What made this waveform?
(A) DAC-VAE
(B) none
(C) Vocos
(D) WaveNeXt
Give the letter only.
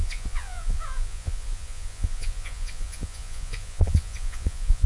C